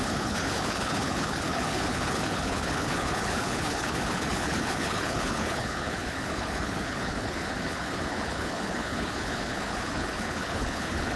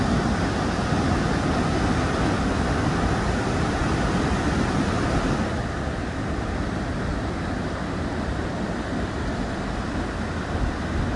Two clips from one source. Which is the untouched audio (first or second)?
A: second